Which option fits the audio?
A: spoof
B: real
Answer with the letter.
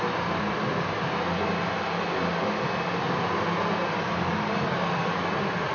B